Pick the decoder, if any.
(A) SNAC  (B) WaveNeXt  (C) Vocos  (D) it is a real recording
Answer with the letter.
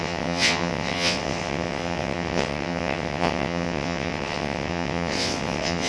B